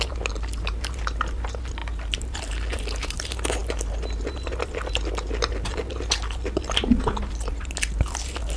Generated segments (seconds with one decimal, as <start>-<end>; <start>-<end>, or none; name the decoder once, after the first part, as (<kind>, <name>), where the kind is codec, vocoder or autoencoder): none